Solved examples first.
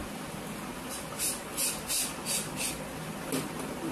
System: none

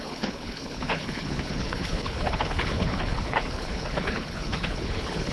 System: codec, HILCodec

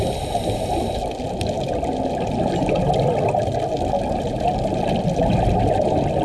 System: none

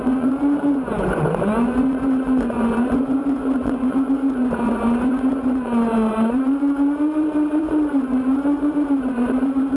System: vocoder, Vocos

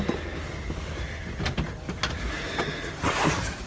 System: none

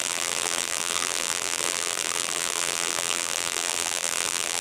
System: vocoder, BigVGAN v2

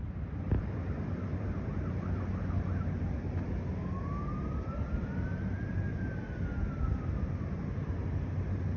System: none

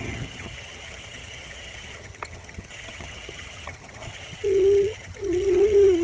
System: vocoder, HiFi-GAN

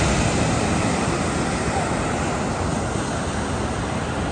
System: none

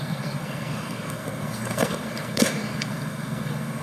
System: codec, SNAC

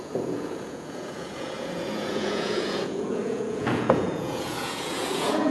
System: vocoder, Vocos